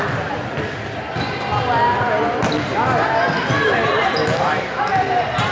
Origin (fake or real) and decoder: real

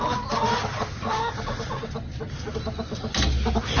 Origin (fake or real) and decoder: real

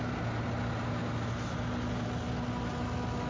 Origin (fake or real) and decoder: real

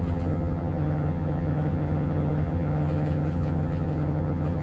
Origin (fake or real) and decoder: fake, vocoder, HiFi-GAN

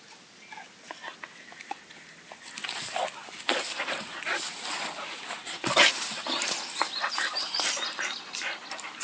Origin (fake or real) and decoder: real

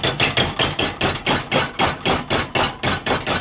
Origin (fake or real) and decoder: real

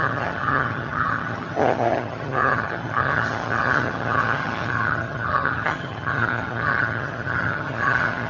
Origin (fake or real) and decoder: fake, vocoder, HiFi-GAN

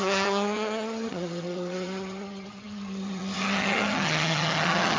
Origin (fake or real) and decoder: fake, vocoder, HiFi-GAN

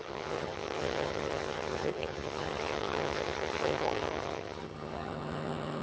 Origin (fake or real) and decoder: fake, vocoder, HiFi-GAN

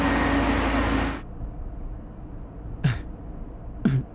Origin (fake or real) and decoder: real